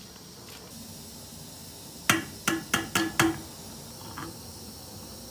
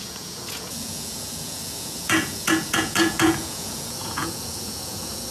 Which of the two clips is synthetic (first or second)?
second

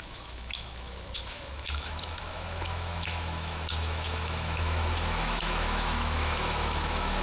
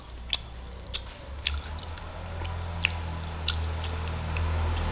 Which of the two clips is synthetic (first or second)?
first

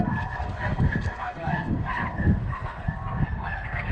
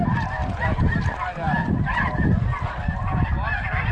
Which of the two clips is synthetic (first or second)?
first